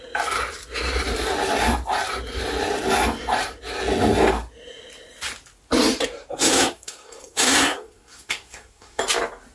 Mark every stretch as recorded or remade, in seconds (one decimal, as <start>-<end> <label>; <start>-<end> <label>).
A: 0.0-6.5 recorded; 6.5-9.0 remade; 9.0-9.5 recorded